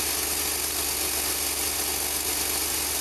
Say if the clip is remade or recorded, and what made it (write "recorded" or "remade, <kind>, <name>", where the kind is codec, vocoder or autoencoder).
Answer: recorded